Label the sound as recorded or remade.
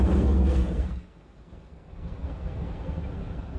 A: remade